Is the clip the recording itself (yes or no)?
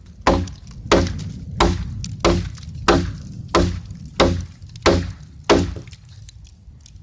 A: yes